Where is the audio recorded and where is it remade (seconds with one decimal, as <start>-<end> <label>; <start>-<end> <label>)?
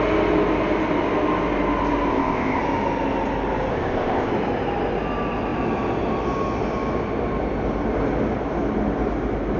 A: 0.0-2.1 recorded; 2.1-2.6 remade; 2.6-3.7 recorded; 3.7-4.3 remade; 4.3-9.6 recorded